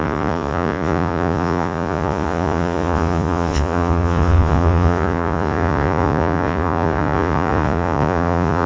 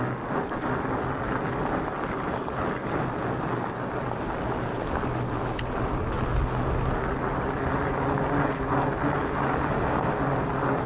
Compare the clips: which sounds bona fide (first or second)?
second